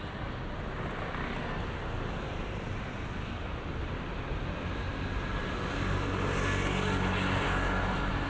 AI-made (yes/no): no